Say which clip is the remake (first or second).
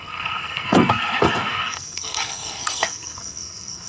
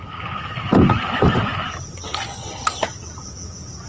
first